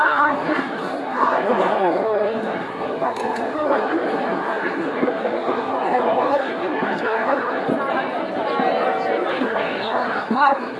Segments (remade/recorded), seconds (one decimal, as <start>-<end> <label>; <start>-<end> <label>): 0.0-7.7 remade; 7.7-9.3 recorded; 9.3-10.8 remade